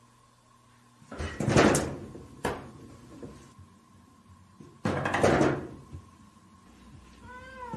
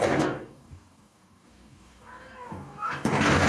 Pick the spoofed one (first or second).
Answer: second